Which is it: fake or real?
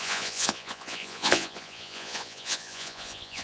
fake